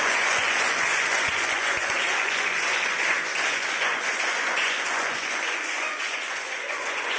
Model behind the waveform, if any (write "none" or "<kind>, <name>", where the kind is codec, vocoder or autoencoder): vocoder, Vocos